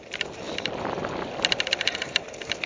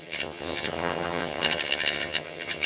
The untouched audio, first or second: first